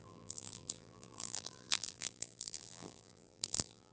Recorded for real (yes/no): no